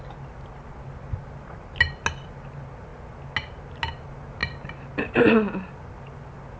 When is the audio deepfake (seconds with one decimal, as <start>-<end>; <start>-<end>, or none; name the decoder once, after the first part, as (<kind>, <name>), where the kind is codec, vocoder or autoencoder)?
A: none

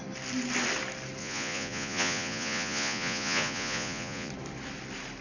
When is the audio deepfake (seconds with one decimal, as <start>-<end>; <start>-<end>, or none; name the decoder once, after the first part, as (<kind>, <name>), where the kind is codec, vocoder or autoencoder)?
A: 1.2-4.3 (vocoder, Vocos)

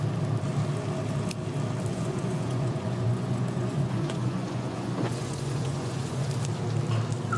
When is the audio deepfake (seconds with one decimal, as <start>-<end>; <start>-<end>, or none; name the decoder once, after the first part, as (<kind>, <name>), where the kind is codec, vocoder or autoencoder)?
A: 1.9-6.3 (vocoder, Vocos)

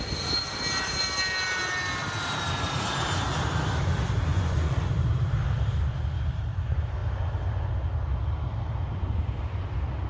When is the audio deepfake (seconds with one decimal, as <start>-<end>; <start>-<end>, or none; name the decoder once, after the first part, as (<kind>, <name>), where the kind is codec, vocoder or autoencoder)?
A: 4.3-4.9 (vocoder, Vocos)

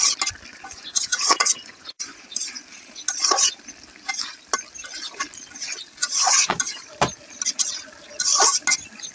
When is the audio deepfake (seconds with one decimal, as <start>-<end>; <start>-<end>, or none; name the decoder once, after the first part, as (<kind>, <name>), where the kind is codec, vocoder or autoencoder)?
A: 0.5-2.5 (vocoder, Vocos); 6.0-6.6

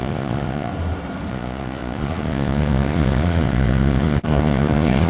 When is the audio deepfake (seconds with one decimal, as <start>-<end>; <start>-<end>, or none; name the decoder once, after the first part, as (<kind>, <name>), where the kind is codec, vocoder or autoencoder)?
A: 0.0-0.7 (vocoder, Vocos); 1.3-5.1

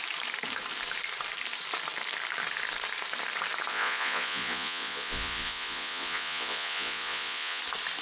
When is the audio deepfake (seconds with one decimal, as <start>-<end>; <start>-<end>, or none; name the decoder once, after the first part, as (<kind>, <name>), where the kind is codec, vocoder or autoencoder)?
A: 3.7-7.6 (vocoder, Vocos)

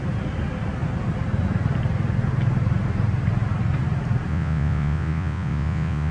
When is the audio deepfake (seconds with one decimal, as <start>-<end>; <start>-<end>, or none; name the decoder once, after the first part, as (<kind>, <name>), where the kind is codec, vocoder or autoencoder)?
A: 4.3-6.1 (vocoder, Vocos)